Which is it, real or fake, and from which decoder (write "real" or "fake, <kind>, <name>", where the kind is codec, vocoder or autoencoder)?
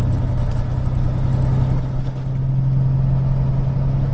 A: real